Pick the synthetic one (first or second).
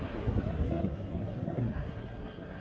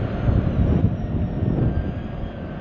first